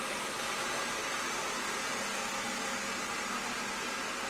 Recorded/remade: recorded